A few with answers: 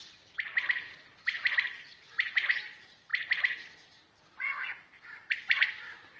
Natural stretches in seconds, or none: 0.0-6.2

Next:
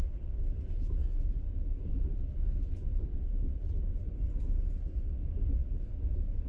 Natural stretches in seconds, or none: 0.0-6.5

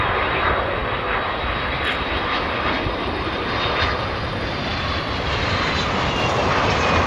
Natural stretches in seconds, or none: 0.0-7.1